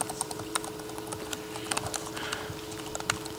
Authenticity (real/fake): fake